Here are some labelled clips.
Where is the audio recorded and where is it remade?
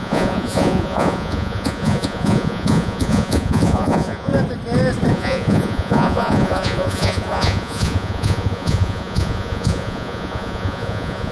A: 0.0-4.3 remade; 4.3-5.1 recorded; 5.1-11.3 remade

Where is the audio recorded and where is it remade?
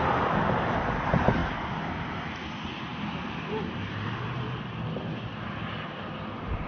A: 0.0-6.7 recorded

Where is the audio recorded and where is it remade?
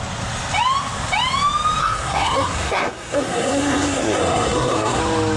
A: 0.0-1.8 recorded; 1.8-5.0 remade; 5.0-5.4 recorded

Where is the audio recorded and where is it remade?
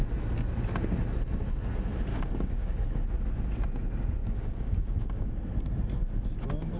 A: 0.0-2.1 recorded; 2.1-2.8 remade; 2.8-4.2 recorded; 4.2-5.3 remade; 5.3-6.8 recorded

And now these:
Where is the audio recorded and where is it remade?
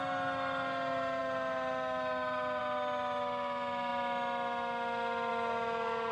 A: 0.0-6.1 recorded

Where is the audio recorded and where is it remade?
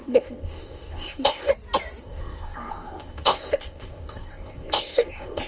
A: 0.0-1.5 remade; 1.5-2.0 recorded; 2.0-5.5 remade